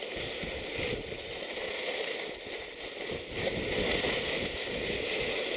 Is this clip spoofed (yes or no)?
no